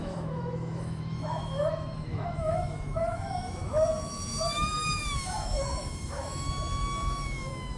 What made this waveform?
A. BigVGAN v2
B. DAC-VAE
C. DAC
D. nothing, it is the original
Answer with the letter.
B